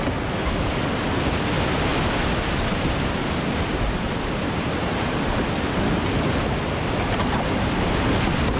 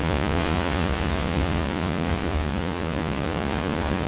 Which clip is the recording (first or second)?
first